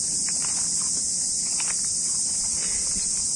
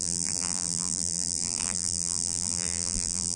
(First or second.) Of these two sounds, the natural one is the first